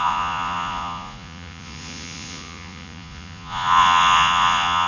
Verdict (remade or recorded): remade